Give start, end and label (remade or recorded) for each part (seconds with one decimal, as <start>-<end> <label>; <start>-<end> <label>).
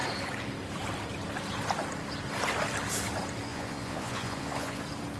0.0-3.5 recorded; 3.5-4.8 remade; 4.8-5.2 recorded